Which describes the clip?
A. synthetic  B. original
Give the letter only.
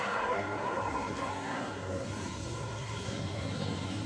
A